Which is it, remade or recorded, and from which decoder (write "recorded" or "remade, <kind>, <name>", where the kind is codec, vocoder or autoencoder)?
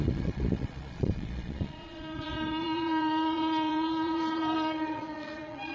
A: remade, vocoder, Vocos